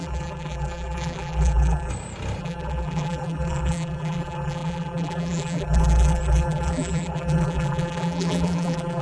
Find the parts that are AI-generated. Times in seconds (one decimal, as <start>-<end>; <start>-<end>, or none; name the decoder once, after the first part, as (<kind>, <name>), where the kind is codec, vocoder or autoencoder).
0.0-1.9 (vocoder, BigVGAN v2); 2.4-9.0